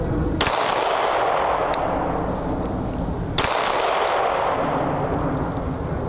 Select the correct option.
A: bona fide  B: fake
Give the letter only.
A